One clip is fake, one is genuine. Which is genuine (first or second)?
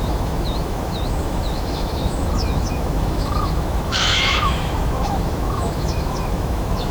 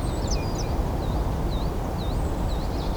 second